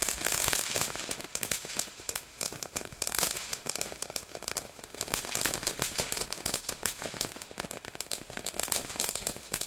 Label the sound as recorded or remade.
remade